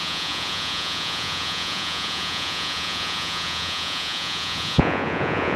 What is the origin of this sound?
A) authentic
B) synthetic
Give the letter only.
B